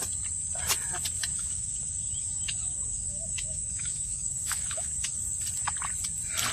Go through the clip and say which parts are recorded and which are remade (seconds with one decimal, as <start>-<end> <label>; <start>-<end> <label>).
0.0-1.3 recorded; 1.3-5.2 remade; 5.2-6.5 recorded